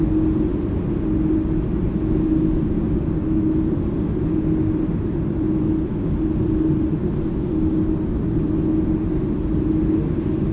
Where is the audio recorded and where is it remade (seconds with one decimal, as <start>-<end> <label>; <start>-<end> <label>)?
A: 0.0-10.5 recorded